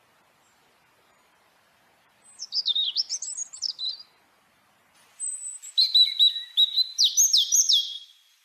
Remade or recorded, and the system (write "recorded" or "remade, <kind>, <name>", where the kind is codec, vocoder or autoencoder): recorded